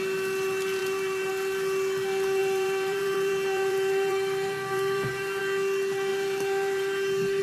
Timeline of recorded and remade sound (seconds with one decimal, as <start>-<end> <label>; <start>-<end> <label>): 0.0-0.8 recorded; 0.8-1.3 remade; 1.3-2.4 recorded; 2.4-5.4 remade; 5.4-6.1 recorded; 6.1-7.4 remade